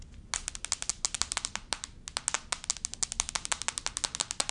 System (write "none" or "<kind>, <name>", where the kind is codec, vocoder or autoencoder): none